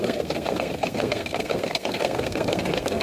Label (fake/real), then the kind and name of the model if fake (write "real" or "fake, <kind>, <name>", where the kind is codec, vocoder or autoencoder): fake, codec, SNAC